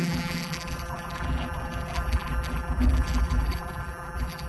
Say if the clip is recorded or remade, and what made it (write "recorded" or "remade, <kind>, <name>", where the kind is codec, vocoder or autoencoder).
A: remade, vocoder, BigVGAN v2